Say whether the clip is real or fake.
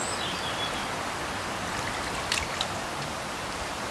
real